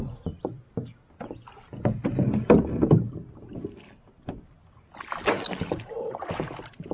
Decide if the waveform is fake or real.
real